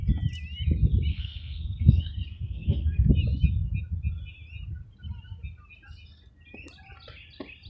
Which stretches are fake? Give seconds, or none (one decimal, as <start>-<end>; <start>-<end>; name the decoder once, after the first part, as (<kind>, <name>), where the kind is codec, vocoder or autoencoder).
1.1-3.1 (codec, SNAC)